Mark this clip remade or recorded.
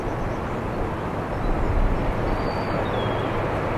recorded